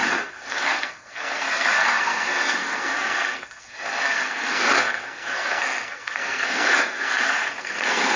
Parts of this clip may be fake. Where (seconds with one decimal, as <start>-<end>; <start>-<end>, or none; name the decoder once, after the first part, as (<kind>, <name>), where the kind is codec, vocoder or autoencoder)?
0.0-8.2 (codec, SNAC)